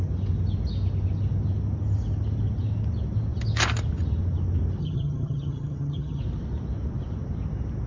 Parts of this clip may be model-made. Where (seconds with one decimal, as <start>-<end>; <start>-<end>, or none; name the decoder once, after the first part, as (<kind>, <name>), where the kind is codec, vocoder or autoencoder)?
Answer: 4.8-6.2 (vocoder, HiFi-GAN)